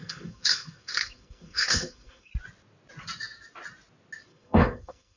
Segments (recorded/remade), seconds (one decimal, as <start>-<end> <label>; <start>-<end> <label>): 0.0-2.3 remade; 2.3-4.3 recorded; 4.3-5.2 remade